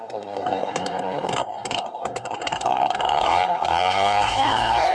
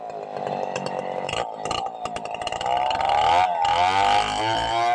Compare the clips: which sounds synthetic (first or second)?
first